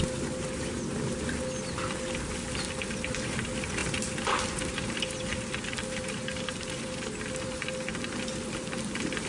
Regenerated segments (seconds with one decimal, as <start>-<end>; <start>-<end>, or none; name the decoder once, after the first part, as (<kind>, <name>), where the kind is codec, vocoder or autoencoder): none